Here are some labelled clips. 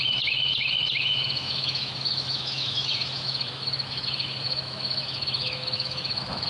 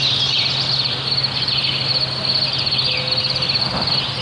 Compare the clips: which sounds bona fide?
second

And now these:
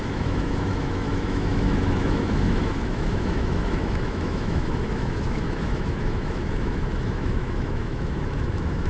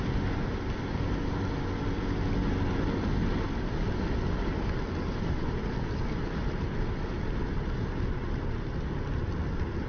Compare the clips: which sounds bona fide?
second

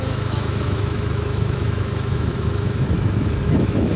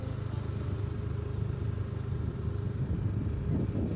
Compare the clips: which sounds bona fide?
second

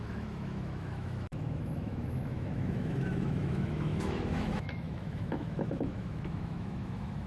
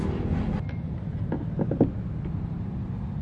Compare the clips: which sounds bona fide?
second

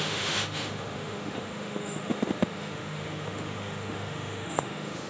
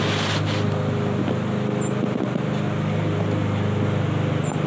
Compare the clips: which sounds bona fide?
second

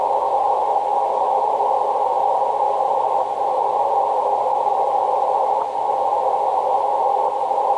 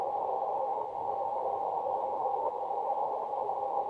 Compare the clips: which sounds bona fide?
first